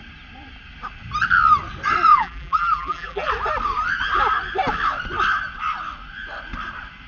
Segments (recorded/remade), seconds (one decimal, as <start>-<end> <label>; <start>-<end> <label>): 0.0-2.1 recorded; 2.1-3.3 remade; 3.3-7.1 recorded